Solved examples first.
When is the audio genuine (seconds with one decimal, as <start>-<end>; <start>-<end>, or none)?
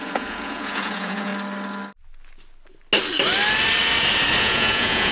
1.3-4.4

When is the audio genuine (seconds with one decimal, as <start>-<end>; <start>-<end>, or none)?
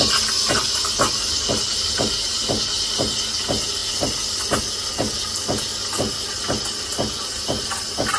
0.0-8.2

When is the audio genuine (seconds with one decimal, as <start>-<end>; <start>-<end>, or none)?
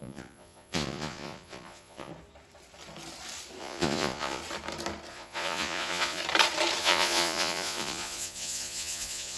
2.1-3.6; 4.4-5.1; 6.2-6.8